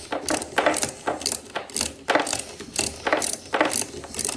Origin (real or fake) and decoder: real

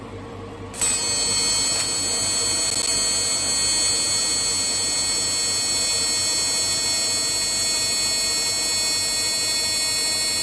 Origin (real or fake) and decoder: real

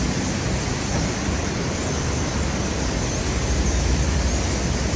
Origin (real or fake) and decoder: real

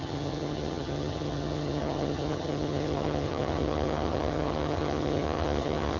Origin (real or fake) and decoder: fake, vocoder, HiFi-GAN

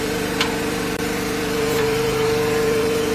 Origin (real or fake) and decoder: fake, vocoder, BigVGAN v2